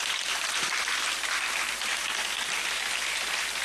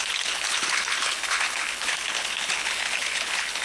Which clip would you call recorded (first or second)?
first